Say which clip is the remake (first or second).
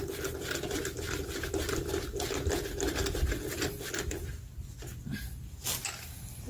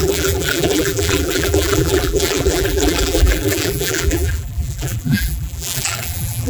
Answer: second